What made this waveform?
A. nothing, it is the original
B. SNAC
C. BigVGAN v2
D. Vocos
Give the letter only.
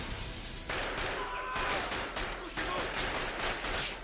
A